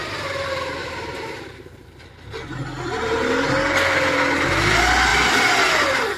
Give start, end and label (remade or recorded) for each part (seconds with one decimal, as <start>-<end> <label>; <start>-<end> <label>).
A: 0.0-0.8 recorded; 0.8-2.0 remade; 2.0-6.2 recorded